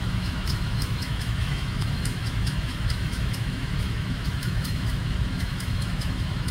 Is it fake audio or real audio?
fake